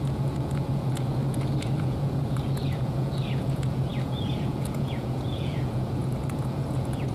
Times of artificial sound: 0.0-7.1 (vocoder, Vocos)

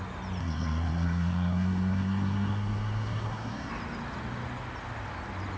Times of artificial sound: 0.4-3.7 (codec, SNAC)

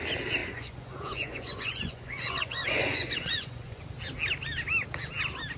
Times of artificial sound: 0.4-3.8 (vocoder, Vocos)

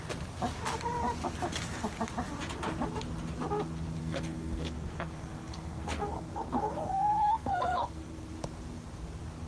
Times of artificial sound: 4.0-8.3 (codec, SNAC)

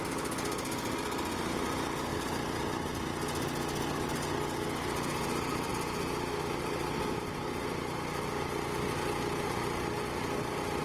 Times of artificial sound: none

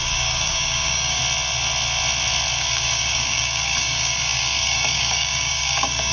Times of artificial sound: 0.0-1.2 (codec, DAC); 2.6-6.1